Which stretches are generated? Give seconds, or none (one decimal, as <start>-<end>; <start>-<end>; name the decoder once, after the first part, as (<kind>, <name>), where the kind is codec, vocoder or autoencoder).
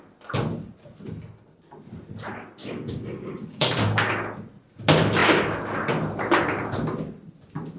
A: 2.6-4.1 (codec, DAC)